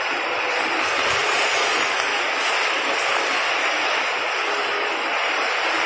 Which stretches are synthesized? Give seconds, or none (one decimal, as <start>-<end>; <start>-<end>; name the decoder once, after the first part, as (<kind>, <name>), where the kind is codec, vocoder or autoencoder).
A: 0.0-2.1 (vocoder, BigVGAN v2); 5.3-5.9